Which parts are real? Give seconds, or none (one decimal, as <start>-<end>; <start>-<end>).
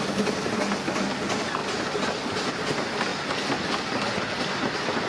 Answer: 0.0-5.1